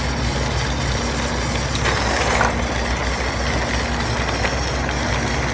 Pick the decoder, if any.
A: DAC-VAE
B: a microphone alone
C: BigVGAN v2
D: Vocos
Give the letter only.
B